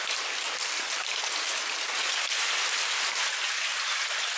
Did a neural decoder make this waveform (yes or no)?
no